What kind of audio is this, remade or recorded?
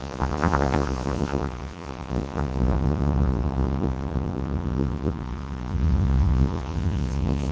remade